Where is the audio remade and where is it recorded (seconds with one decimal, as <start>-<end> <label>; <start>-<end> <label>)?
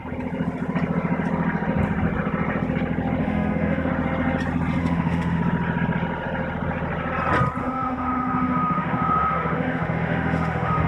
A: 0.0-3.2 recorded; 3.2-3.9 remade; 3.9-4.8 recorded; 4.8-5.4 remade; 5.4-7.6 recorded; 7.6-10.9 remade